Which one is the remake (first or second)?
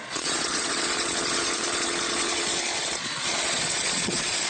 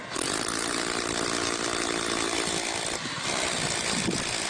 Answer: first